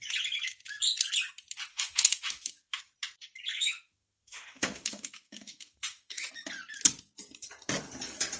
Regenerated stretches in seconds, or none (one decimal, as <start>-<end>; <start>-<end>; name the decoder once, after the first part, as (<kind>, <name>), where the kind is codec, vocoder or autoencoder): 1.7-2.8 (autoencoder, DAC-VAE); 3.5-6.3